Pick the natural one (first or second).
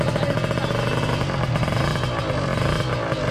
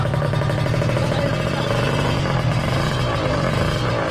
first